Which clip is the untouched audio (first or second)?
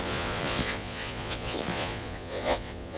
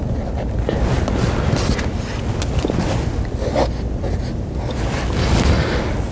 second